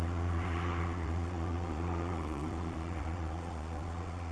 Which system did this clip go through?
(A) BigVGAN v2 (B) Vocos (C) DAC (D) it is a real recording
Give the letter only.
B